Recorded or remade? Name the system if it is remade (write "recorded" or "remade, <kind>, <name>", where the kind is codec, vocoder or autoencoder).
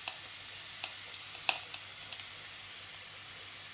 recorded